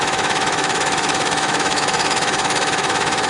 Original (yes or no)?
no